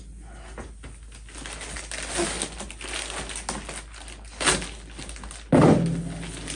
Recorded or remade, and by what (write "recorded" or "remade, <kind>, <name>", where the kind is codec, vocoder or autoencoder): recorded